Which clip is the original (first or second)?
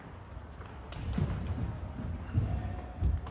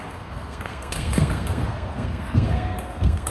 first